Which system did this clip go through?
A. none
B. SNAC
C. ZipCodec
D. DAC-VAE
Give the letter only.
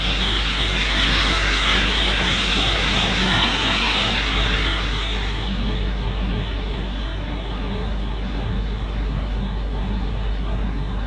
B